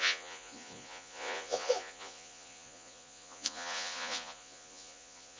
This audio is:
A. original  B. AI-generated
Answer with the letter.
B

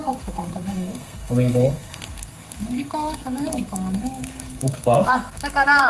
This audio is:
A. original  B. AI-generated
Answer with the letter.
B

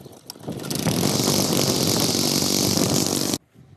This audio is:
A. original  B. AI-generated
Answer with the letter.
A